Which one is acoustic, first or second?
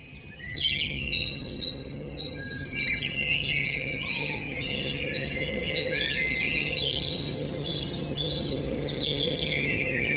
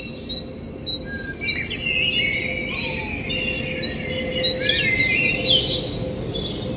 second